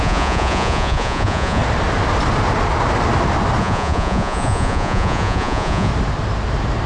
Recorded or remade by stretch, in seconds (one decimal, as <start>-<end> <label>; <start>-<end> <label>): 0.0-1.6 remade; 1.6-3.6 recorded; 3.6-5.9 remade; 5.9-6.9 recorded